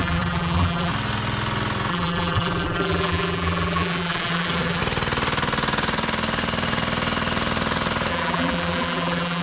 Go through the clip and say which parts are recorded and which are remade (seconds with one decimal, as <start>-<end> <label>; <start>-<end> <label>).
0.0-0.9 remade; 0.9-1.9 recorded; 1.9-4.8 remade; 4.8-8.1 recorded; 8.1-9.4 remade